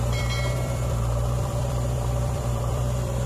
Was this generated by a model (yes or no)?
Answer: yes